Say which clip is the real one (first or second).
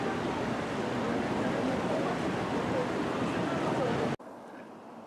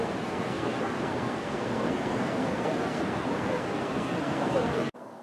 first